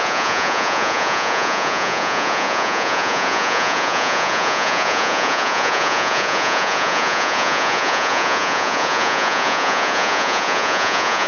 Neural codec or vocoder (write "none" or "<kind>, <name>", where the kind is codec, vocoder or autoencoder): vocoder, Vocos